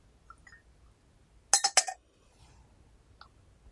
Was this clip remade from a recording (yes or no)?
no